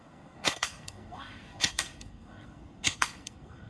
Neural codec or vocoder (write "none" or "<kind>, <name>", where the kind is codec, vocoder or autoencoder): codec, SNAC